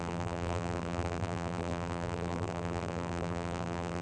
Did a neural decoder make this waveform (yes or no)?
yes